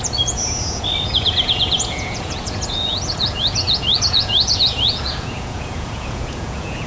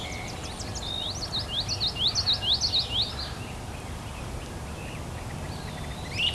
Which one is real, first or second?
second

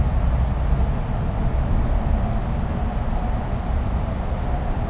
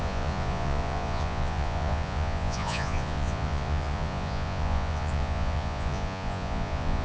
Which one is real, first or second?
first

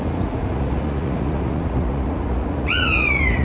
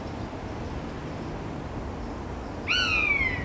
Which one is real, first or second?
second